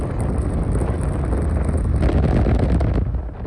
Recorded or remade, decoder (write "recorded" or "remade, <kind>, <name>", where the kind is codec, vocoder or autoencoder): recorded